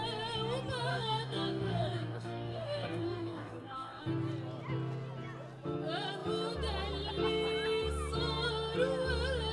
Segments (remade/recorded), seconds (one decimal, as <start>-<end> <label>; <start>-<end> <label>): 0.0-0.9 recorded; 0.9-4.0 remade; 4.0-9.5 recorded